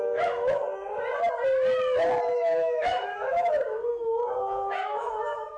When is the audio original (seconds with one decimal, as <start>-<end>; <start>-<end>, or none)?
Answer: 0.6-2.3